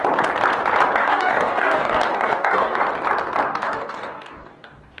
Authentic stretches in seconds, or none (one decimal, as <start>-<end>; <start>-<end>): 0.0-1.0; 2.8-3.5